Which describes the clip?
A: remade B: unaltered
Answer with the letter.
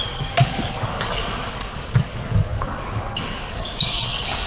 A